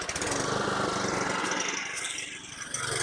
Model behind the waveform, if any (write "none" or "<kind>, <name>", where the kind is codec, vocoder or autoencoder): none